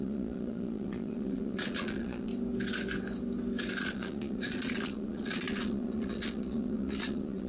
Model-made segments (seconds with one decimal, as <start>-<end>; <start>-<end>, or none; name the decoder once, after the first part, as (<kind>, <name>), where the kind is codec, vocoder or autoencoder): 0.0-2.3 (vocoder, Vocos); 3.8-7.5

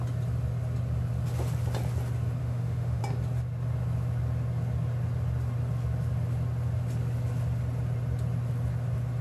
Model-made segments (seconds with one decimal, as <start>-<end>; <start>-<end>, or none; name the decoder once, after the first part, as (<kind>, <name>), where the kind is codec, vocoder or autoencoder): 2.4-3.0 (autoencoder, DAC-VAE)